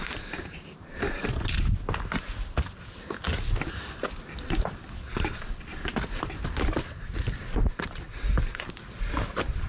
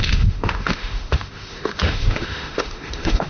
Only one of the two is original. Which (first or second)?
first